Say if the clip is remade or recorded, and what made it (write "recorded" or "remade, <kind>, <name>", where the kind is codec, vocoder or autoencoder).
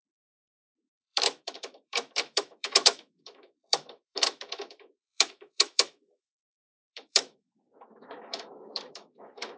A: remade, autoencoder, DAC-VAE